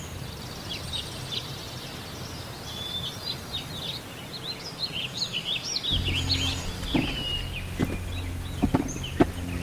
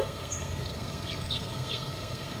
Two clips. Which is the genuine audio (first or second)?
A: first